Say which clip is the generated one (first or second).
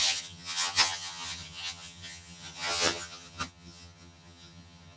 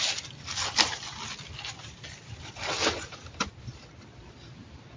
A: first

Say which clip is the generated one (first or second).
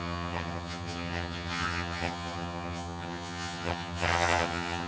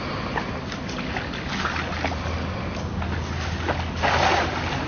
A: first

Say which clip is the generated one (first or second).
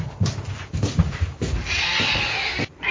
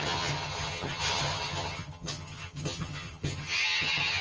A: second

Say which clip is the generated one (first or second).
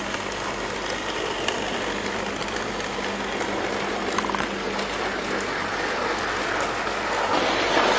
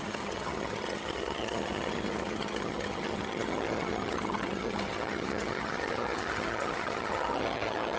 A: second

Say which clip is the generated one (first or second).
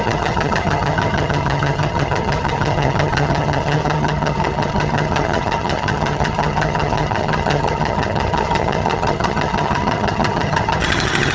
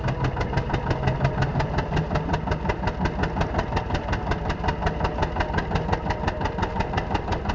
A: first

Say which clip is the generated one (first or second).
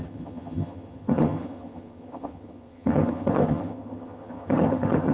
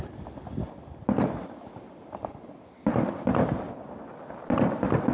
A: first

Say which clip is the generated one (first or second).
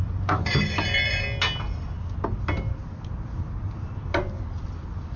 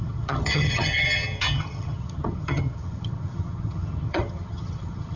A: second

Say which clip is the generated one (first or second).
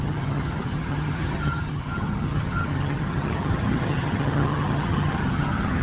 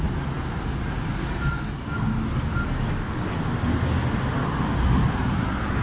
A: first